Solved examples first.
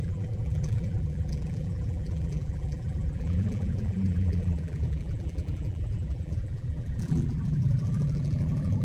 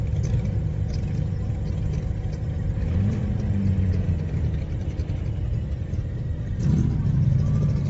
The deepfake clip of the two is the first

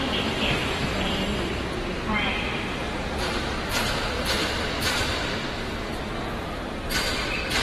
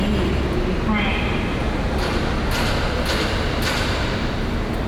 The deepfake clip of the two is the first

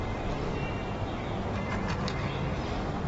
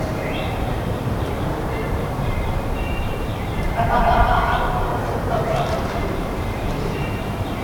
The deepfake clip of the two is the second